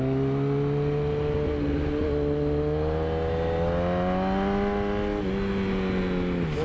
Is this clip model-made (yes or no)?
no